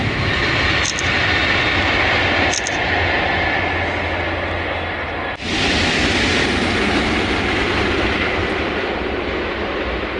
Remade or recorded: recorded